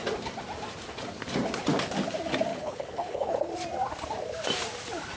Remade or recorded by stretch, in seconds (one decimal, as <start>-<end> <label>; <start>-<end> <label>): 0.0-2.5 recorded; 2.5-3.5 remade; 3.5-5.2 recorded